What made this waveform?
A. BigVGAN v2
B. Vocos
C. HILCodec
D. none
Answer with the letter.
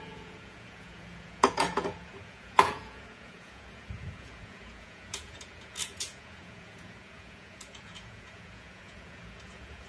B